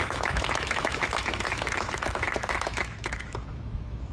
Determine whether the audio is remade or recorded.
remade